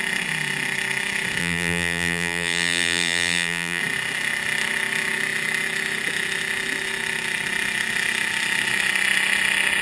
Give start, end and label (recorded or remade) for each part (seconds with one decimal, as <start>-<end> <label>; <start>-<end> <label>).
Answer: 0.0-1.4 recorded; 1.4-3.8 remade; 3.8-9.8 recorded

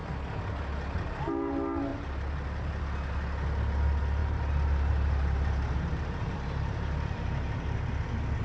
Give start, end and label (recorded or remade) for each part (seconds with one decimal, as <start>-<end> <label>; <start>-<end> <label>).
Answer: 0.0-1.9 recorded; 1.9-2.8 remade; 2.8-4.2 recorded; 4.2-8.0 remade; 8.0-8.4 recorded

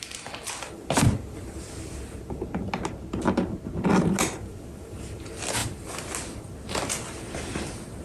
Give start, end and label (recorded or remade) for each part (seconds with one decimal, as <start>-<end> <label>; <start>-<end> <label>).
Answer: 0.0-5.6 recorded; 5.6-6.8 remade; 6.8-8.0 recorded